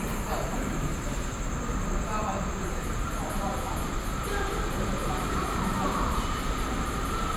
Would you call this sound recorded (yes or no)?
no